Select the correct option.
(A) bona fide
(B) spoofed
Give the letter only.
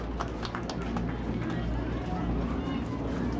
A